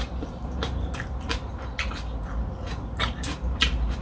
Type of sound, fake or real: real